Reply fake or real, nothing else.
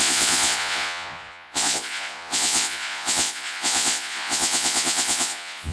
fake